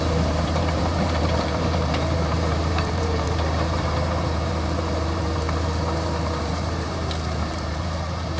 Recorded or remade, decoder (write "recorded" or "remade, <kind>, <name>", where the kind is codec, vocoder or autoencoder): remade, vocoder, BigVGAN v2